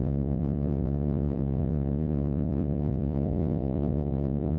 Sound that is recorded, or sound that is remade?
remade